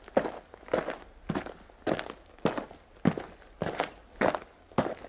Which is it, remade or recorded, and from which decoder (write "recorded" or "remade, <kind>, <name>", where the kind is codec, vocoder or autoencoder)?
recorded